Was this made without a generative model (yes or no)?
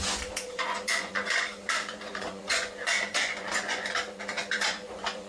no